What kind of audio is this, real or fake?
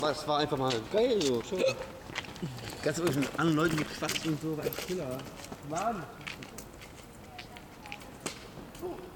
real